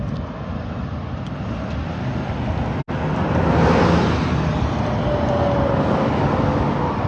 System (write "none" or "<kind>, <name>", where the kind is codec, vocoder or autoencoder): none